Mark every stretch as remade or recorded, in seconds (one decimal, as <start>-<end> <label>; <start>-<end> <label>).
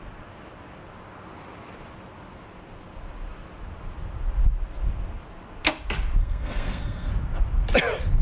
0.0-6.2 recorded; 6.2-7.1 remade; 7.1-8.2 recorded